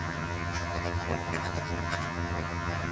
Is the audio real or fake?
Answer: fake